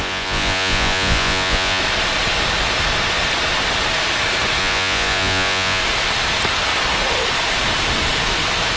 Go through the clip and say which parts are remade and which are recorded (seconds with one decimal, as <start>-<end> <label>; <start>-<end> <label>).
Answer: 0.0-1.8 remade; 1.8-4.6 recorded; 4.6-5.8 remade; 5.8-8.8 recorded